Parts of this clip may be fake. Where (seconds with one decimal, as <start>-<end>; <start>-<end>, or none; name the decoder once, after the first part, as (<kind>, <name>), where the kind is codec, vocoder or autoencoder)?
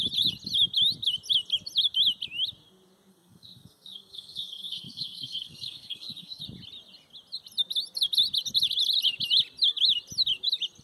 3.1-6.4 (codec, SNAC)